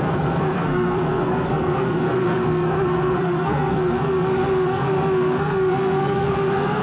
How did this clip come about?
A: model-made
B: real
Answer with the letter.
A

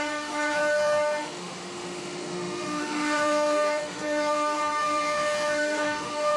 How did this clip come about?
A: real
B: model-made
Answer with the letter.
B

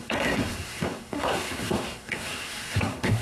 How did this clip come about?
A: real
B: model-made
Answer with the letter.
B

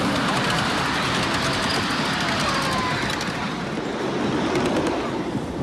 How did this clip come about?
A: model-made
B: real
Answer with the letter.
B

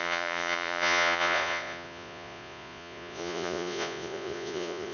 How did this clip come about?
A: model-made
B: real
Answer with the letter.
A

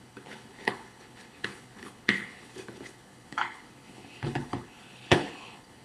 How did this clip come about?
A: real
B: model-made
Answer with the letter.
B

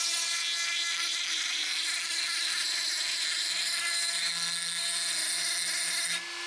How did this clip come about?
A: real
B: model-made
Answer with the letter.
A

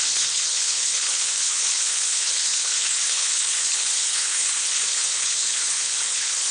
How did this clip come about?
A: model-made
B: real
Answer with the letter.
A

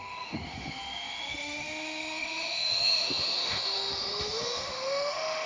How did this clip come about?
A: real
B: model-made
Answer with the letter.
B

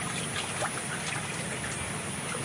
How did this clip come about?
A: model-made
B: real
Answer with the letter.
B